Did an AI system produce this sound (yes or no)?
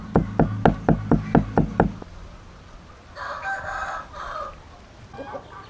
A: no